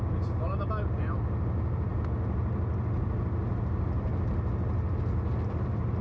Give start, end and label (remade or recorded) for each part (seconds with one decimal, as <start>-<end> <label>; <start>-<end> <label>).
0.0-6.0 recorded